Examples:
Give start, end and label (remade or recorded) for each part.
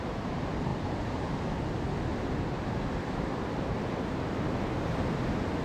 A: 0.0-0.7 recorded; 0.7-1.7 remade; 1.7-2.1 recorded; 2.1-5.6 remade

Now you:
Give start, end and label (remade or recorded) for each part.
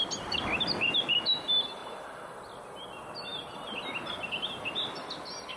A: 0.0-1.8 recorded; 1.8-2.6 remade; 2.6-3.3 recorded; 3.3-4.1 remade; 4.1-5.6 recorded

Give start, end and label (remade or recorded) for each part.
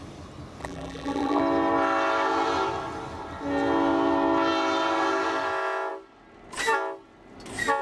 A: 0.0-0.6 recorded; 0.6-1.4 remade; 1.4-7.8 recorded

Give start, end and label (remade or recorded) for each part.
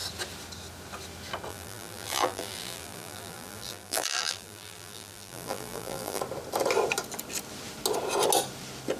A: 0.0-1.5 recorded; 1.5-6.2 remade; 6.2-9.0 recorded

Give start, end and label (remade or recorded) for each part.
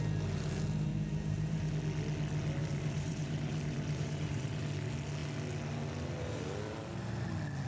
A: 0.0-0.9 recorded; 0.9-1.7 remade; 1.7-2.6 recorded; 2.6-4.6 remade; 4.6-7.7 recorded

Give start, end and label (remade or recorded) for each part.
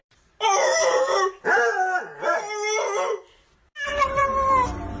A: 0.0-5.0 recorded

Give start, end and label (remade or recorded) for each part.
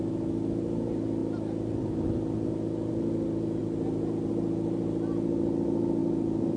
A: 0.0-1.2 remade; 1.2-2.9 recorded; 2.9-6.0 remade; 6.0-6.6 recorded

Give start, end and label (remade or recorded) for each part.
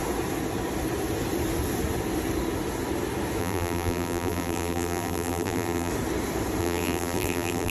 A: 0.0-3.4 recorded; 3.4-5.9 remade; 5.9-6.6 recorded; 6.6-7.7 remade